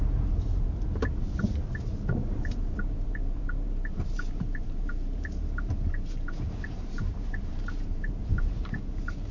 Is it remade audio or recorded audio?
remade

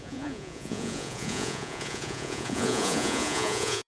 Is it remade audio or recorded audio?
remade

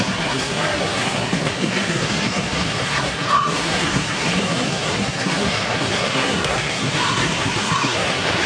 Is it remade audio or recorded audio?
remade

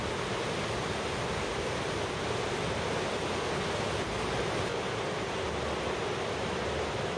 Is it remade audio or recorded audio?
recorded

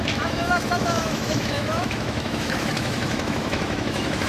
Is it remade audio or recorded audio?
remade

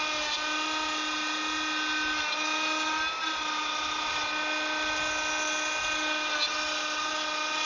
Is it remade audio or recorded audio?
recorded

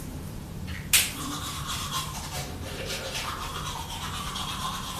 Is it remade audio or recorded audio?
remade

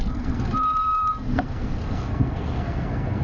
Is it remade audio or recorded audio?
remade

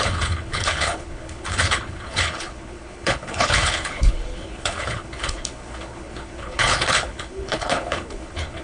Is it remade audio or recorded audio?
remade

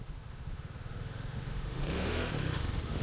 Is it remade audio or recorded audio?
remade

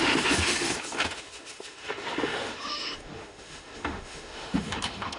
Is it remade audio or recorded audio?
remade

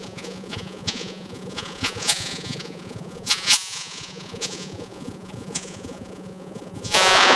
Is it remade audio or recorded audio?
remade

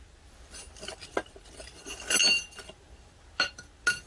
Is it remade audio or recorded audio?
recorded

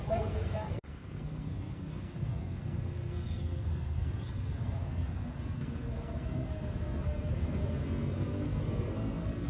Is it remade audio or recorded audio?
remade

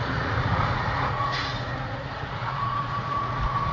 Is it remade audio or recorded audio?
remade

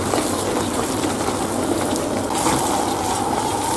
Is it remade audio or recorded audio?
recorded